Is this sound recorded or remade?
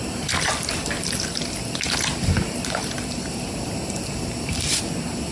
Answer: recorded